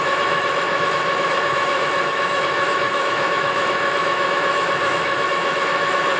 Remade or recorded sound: remade